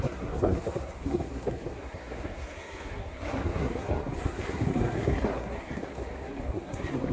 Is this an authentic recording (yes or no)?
no